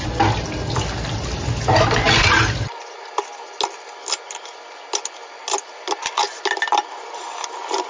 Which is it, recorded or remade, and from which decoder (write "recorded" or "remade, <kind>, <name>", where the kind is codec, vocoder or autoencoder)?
recorded